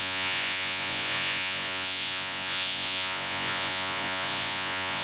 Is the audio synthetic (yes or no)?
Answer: yes